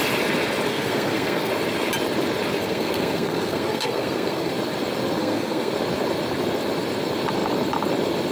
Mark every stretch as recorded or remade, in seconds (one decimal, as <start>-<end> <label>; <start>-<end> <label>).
0.0-0.7 recorded; 0.7-1.5 remade; 1.5-2.6 recorded; 2.6-4.5 remade; 4.5-5.2 recorded; 5.2-5.7 remade; 5.7-8.3 recorded